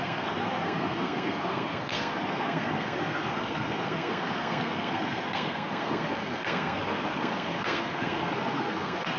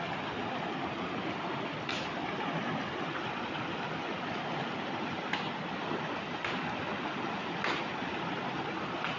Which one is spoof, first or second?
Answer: first